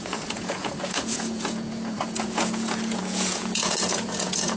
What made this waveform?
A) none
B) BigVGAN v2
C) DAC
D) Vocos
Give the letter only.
D